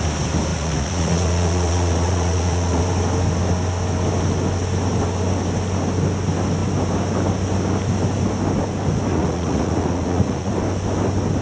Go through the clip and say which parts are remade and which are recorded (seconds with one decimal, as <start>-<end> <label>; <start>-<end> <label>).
0.0-0.5 recorded; 0.5-2.8 remade; 2.8-9.1 recorded; 9.1-10.5 remade; 10.5-11.4 recorded